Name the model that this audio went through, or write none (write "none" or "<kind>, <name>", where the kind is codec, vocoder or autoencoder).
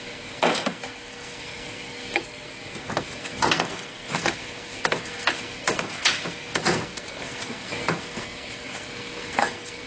codec, SNAC